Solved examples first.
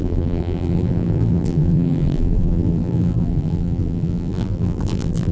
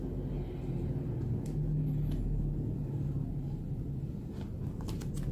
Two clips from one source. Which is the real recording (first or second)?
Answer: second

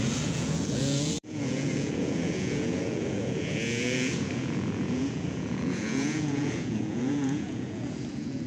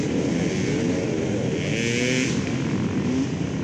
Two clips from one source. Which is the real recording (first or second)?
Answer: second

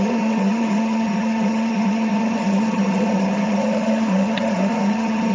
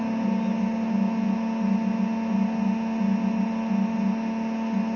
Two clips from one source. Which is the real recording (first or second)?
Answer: second